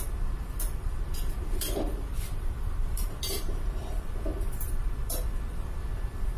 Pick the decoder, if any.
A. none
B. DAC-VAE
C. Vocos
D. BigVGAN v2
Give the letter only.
D